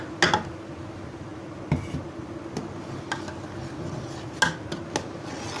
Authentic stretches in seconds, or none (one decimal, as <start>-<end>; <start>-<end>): 0.0-5.6